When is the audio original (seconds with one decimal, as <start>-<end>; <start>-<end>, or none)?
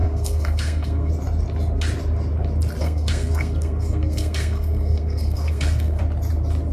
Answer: 1.1-2.8; 6.0-6.7